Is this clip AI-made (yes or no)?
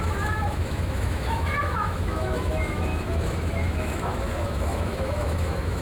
yes